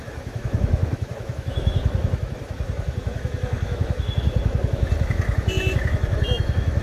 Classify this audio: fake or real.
fake